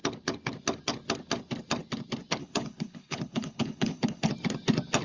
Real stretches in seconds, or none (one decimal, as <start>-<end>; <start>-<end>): 0.0-2.4; 4.3-5.0